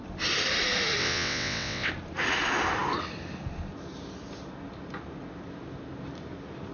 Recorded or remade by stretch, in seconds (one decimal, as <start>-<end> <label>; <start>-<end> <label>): 0.0-1.0 recorded; 1.0-1.9 remade; 1.9-6.7 recorded